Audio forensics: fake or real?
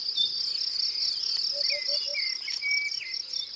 real